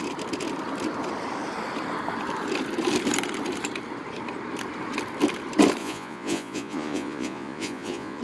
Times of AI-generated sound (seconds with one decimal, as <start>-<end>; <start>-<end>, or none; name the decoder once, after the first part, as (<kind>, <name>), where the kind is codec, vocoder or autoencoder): 5.8-8.2 (vocoder, Vocos)